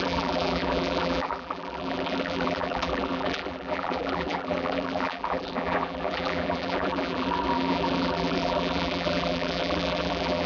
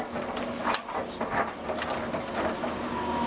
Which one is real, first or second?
second